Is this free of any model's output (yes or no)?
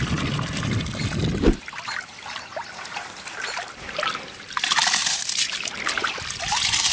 yes